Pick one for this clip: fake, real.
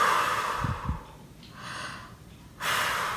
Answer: fake